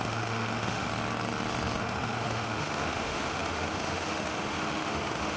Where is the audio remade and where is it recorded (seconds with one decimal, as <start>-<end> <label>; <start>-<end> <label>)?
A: 0.0-0.9 remade; 0.9-1.8 recorded; 1.8-5.4 remade